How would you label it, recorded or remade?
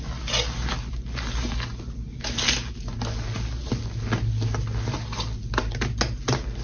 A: recorded